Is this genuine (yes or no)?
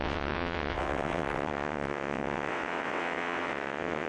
no